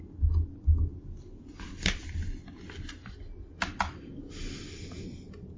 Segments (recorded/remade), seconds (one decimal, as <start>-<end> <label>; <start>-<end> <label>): 0.0-5.6 recorded